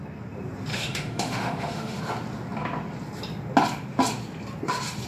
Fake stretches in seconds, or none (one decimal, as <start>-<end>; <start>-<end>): 0.7-2.0